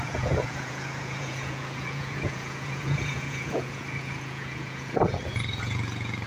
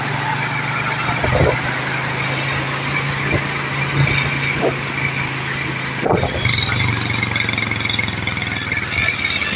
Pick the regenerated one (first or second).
first